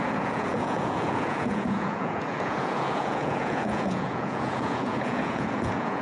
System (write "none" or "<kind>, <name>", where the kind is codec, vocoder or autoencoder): vocoder, Vocos